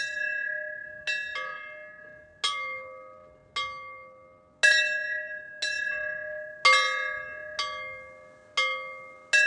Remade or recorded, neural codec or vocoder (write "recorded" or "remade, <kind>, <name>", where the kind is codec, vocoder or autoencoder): recorded